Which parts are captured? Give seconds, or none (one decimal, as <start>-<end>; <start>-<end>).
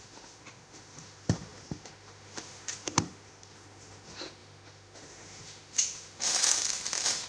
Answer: none